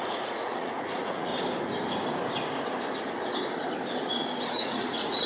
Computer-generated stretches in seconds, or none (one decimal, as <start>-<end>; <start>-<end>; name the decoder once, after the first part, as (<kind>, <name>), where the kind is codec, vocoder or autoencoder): 0.0-1.3 (vocoder, Vocos); 4.5-5.3